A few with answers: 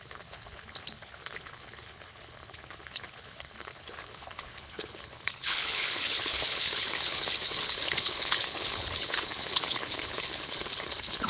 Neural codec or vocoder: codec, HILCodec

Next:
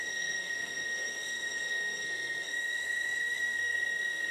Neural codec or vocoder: codec, SNAC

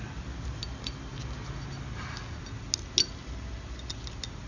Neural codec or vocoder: none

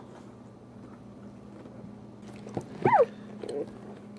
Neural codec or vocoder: none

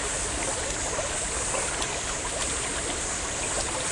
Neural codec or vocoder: none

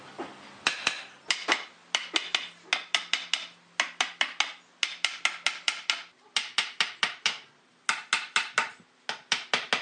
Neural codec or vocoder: none